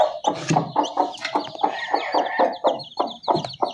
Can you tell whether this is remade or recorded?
recorded